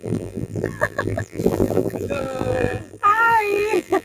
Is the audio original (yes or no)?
no